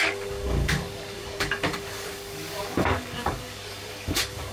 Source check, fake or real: fake